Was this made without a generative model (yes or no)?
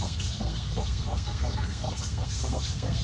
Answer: no